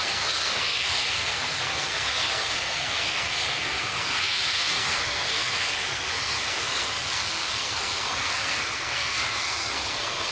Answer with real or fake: fake